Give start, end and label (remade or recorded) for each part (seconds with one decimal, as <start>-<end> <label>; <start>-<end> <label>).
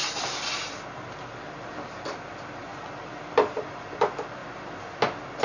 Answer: 0.0-5.4 recorded